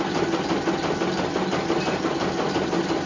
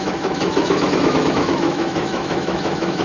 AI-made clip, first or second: second